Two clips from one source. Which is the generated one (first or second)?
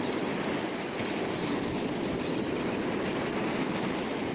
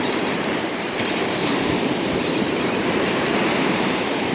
second